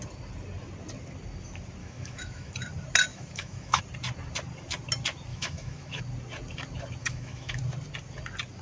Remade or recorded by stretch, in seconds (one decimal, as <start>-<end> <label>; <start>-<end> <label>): 0.0-1.8 recorded; 1.8-2.5 remade; 2.5-3.1 recorded; 3.1-3.8 remade; 3.8-5.3 recorded; 5.3-6.0 remade; 6.0-7.0 recorded; 7.0-7.6 remade; 7.6-8.6 recorded